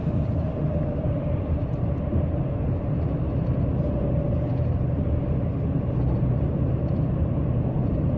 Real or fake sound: fake